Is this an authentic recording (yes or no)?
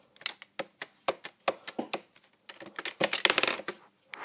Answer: yes